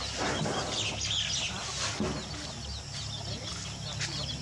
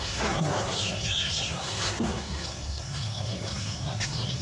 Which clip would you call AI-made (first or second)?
second